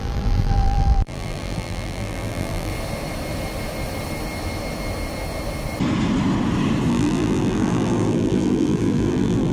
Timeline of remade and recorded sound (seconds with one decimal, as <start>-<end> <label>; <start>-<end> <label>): 0.0-2.7 remade; 2.7-6.9 recorded; 6.9-9.5 remade